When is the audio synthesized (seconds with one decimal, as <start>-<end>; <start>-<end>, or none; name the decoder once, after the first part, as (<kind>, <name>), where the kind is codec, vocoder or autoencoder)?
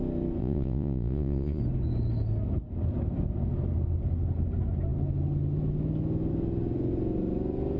0.4-1.6 (vocoder, Vocos)